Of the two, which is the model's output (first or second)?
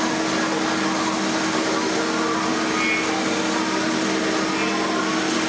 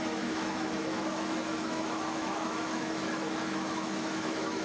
second